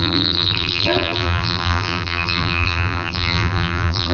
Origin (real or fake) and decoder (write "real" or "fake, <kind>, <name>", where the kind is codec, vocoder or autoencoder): fake, vocoder, BigVGAN v2